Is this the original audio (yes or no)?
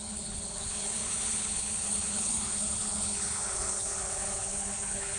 no